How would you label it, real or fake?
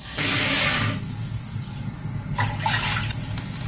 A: real